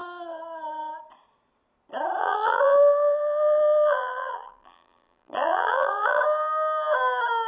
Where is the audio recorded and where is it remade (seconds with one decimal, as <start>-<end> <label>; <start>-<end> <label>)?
0.0-2.2 recorded; 2.2-6.2 remade; 6.2-7.5 recorded